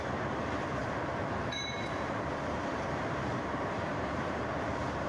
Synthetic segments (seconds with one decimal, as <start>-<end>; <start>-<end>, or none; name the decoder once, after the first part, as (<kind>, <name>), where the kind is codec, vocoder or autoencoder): 0.0-5.1 (vocoder, BigVGAN v2)